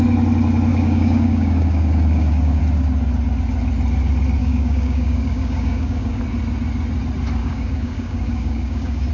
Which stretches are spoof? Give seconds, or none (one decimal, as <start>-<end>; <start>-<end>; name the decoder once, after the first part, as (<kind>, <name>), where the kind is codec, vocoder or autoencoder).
0.7-2.6 (codec, DAC); 4.4-6.2; 7.4-9.1